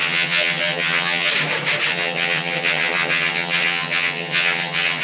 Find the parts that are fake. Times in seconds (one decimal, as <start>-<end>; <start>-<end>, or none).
0.0-1.3; 1.9-5.0